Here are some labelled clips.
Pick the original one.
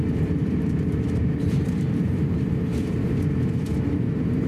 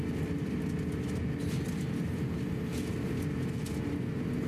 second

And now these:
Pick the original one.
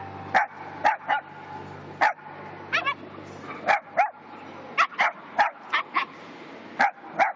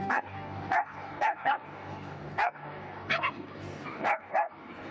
first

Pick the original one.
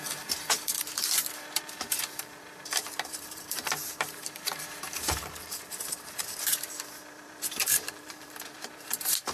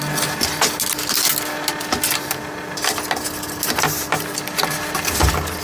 second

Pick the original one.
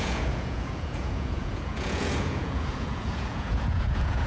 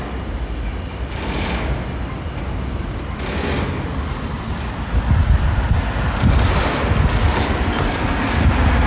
second